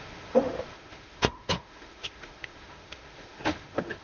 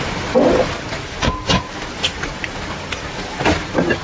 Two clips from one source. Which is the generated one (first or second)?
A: first